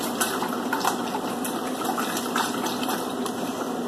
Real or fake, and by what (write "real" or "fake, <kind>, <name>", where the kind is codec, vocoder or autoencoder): real